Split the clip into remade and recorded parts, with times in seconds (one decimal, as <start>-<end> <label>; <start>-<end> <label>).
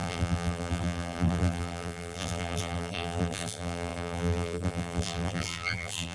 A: 0.0-6.1 remade